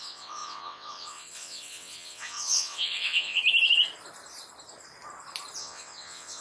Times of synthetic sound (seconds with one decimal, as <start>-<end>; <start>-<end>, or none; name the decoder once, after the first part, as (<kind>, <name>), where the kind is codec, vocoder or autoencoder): 0.0-3.4 (vocoder, WaveNeXt); 5.6-6.4